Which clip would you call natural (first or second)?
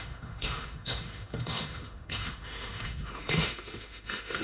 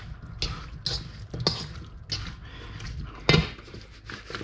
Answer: second